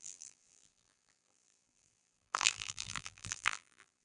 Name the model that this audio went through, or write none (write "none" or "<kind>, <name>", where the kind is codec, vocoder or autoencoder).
vocoder, BigVGAN v2